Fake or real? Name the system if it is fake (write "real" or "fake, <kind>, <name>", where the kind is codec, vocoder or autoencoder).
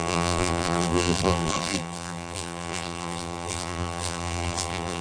fake, vocoder, BigVGAN v2